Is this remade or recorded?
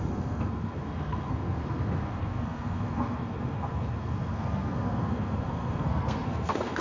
remade